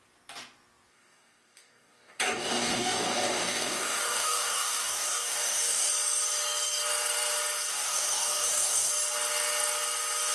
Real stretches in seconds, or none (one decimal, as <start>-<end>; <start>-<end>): 0.0-0.9; 5.9-7.7; 8.9-10.3

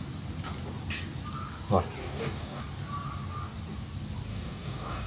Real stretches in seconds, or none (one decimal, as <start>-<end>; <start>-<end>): 0.0-2.0; 2.6-4.3

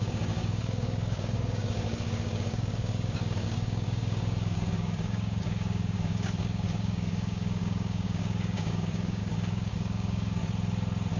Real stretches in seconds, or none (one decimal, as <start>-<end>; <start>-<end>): 10.4-11.2

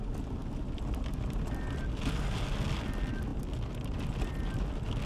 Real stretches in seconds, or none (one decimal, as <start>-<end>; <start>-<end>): 0.0-5.1

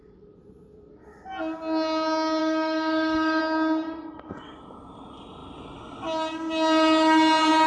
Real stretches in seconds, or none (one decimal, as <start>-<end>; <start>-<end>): 0.0-2.4; 3.4-7.7